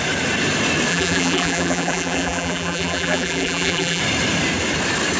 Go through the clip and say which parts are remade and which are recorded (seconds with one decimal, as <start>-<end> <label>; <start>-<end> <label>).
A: 0.0-0.9 recorded; 0.9-4.0 remade; 4.0-5.2 recorded